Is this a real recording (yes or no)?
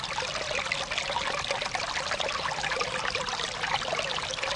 yes